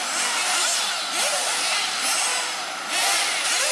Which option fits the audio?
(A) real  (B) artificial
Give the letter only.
A